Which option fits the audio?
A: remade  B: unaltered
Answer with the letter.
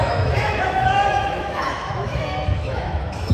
A